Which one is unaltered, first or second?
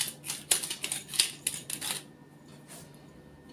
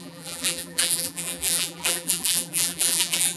first